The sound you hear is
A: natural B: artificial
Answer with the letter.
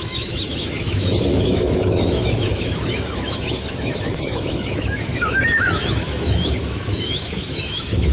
B